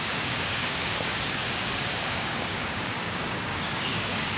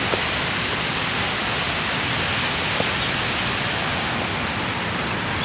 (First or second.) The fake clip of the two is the first